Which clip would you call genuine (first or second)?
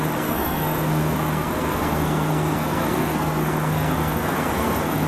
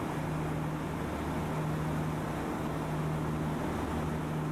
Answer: second